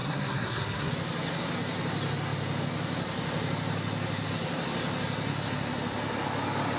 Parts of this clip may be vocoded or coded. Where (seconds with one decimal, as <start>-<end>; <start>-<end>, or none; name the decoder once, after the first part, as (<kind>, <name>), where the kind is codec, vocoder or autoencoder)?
0.0-0.9 (codec, SNAC)